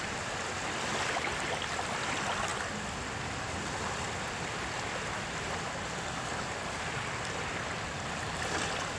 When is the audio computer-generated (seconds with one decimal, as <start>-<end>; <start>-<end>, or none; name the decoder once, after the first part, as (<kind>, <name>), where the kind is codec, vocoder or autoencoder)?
none